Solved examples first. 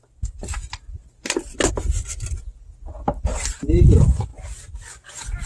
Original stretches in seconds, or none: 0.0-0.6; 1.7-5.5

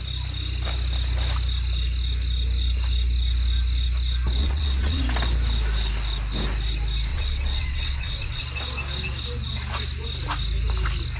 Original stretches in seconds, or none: 0.0-4.4; 5.0-7.1; 8.4-11.2

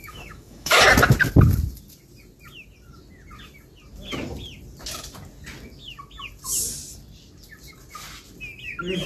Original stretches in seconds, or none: 0.8-9.1

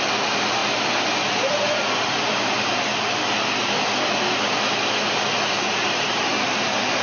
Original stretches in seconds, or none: 0.6-1.5; 2.9-5.5

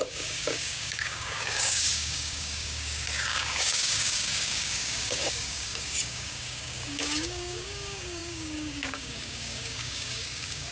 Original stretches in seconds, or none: none